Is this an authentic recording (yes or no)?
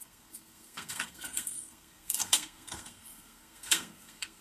no